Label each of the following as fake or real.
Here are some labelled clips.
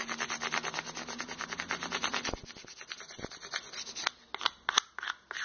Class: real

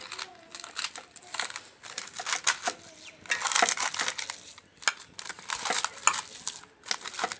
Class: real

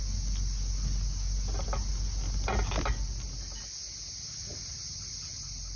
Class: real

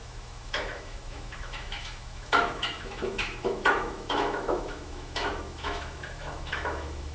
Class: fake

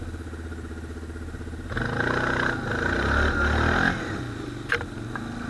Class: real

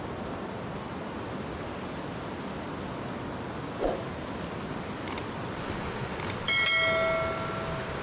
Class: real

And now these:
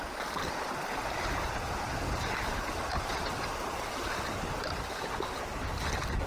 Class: fake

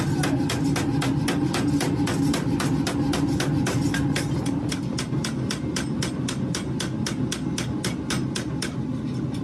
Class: real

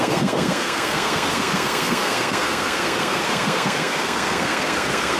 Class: fake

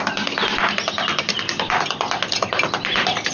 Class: real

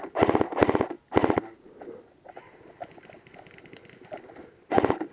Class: real